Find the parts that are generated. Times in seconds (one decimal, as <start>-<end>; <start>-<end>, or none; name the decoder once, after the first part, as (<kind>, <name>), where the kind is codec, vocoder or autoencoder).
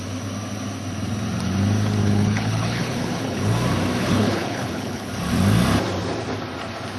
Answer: 2.0-3.5 (codec, HILCodec); 4.0-5.1